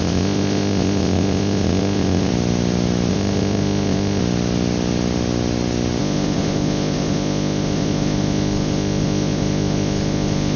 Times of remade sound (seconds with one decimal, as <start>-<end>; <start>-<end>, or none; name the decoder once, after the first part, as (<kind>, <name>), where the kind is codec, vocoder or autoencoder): 0.0-2.3 (codec, ZipCodec); 3.1-4.2; 6.0-10.6